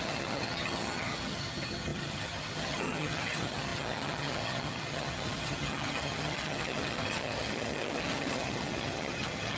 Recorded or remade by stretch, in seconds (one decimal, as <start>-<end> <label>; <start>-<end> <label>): 0.0-9.6 remade